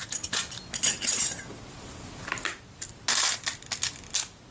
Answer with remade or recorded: recorded